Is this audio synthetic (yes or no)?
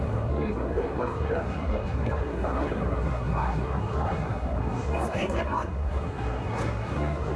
yes